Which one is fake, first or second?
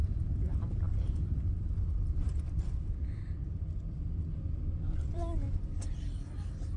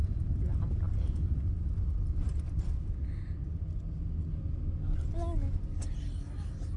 first